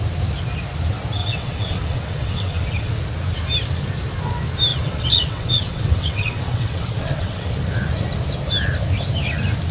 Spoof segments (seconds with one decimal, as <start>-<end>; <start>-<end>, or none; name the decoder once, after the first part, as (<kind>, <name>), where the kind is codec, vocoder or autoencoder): 1.2-2.9 (vocoder, WaveNeXt); 4.7-7.5